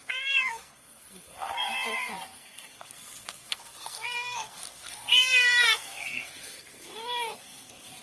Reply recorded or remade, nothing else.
remade